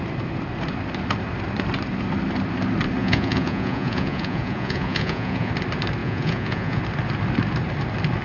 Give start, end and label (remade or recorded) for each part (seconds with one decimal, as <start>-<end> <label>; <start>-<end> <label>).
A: 0.0-3.0 recorded; 3.0-5.5 remade; 5.5-6.0 recorded; 6.0-6.8 remade; 6.8-8.2 recorded